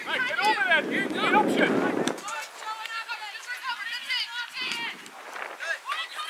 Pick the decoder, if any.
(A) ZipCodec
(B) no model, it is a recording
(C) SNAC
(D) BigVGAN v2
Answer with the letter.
B